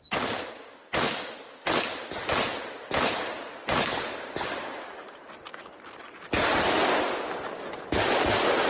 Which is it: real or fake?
real